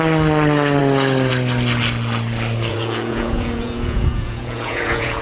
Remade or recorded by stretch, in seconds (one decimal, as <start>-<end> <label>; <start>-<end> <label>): 0.0-2.7 recorded; 2.7-5.2 remade